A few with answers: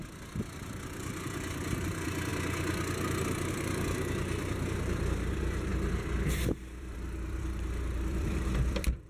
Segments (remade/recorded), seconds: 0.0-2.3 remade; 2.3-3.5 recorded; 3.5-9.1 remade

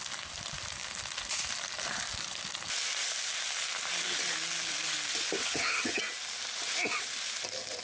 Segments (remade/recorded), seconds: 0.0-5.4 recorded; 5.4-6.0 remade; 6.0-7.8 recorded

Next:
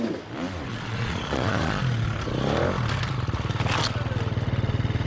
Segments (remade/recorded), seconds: 0.0-0.7 recorded; 0.7-1.8 remade; 1.8-5.1 recorded

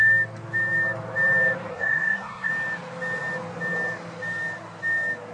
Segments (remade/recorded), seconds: 0.0-1.7 recorded; 1.7-2.5 remade; 2.5-5.3 recorded